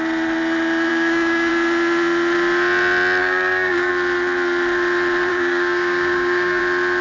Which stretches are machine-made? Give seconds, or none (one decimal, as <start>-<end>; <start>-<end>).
0.9-1.5; 3.2-3.9; 5.3-6.6